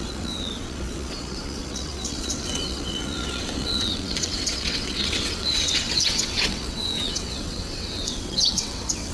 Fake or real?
fake